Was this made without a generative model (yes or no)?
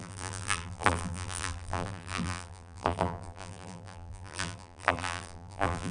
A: no